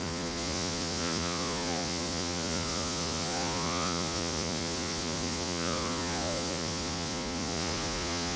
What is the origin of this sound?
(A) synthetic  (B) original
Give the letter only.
A